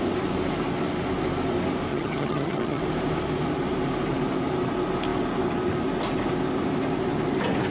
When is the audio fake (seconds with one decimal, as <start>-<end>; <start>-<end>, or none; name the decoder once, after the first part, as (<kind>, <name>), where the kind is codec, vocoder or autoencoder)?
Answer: 1.9-2.8 (vocoder, HiFi-GAN)